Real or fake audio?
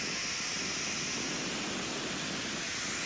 real